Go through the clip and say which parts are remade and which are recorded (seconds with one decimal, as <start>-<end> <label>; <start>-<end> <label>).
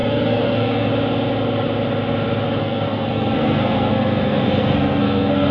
0.0-0.9 remade; 0.9-2.6 recorded; 2.6-5.5 remade